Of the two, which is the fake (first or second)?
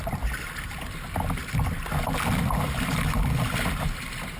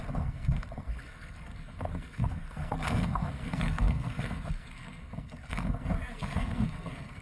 second